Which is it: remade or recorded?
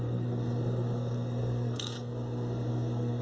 remade